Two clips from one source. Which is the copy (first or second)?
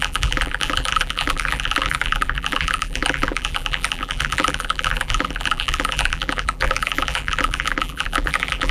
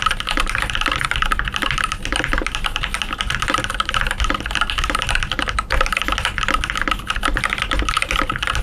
first